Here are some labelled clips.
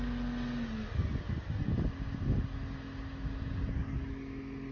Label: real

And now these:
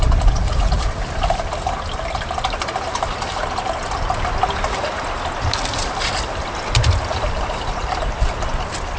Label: real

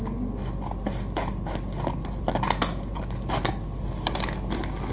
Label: real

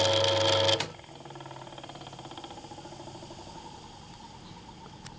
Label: real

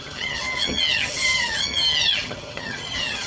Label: fake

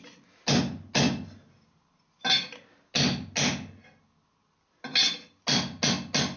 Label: real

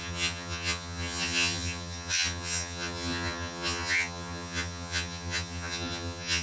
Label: fake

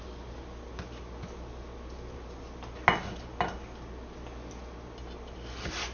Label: real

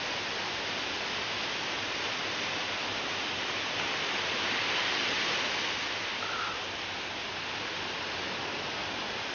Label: real